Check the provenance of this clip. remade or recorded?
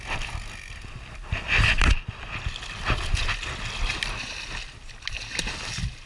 recorded